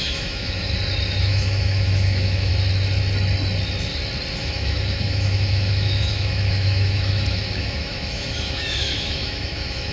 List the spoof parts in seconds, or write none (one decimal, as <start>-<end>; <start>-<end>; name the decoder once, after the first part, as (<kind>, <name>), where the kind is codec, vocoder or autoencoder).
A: 0.0-0.6 (autoencoder, DAC-VAE); 1.2-2.5; 4.4-9.9